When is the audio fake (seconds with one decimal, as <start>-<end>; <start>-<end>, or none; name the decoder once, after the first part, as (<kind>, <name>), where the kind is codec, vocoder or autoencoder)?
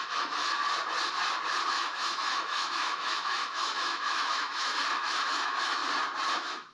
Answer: 0.0-0.6 (autoencoder, DAC-VAE); 1.7-5.8; 6.3-6.7